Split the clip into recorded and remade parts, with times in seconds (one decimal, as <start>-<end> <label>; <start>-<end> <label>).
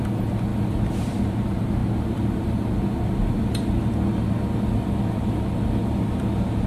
0.0-0.5 recorded; 0.5-1.2 remade; 1.2-6.7 recorded